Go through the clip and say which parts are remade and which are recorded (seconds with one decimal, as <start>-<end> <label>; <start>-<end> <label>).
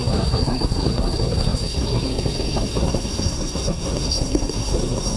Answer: 0.0-5.2 remade